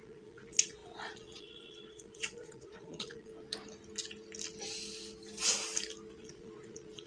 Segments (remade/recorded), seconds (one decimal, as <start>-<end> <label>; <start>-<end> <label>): 0.0-3.3 remade; 3.3-6.1 recorded; 6.1-7.1 remade